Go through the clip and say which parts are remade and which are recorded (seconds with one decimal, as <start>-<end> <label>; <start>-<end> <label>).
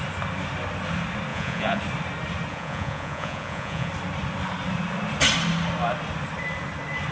0.0-1.3 recorded; 1.3-1.8 remade; 1.8-2.5 recorded; 2.5-3.9 remade; 3.9-7.1 recorded